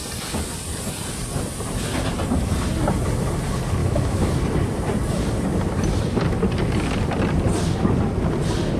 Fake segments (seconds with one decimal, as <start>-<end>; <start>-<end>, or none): 3.8-4.4

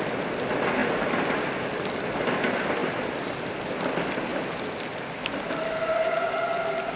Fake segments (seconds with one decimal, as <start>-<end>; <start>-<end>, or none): none

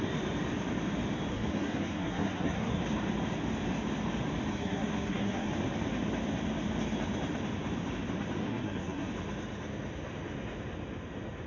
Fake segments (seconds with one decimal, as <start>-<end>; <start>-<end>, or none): 1.3-2.8; 4.5-5.5; 8.4-9.1

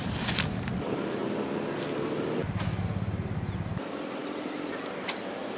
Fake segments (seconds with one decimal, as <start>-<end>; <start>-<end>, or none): 0.0-2.4; 3.7-5.6

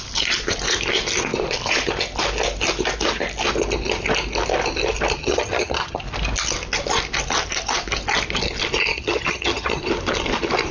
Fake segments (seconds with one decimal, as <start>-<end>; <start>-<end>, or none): 5.2-6.0; 8.9-9.8